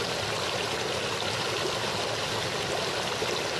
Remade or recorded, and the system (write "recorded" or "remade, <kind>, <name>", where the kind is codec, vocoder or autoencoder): recorded